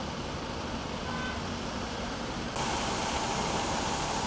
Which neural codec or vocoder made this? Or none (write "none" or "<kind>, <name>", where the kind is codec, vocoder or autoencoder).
none